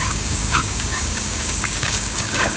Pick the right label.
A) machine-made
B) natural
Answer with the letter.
A